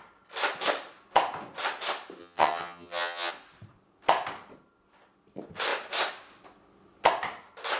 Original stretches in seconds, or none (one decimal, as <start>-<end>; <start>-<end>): 0.0-2.2; 3.3-7.8